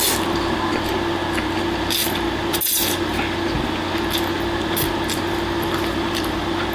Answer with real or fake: real